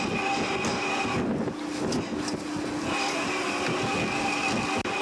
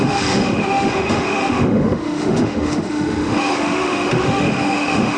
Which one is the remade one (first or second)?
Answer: second